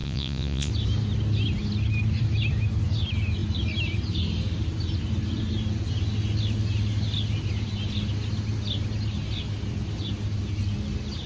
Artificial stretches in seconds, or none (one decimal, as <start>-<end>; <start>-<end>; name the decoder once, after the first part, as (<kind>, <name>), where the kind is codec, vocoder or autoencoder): 0.0-0.7 (vocoder, Vocos)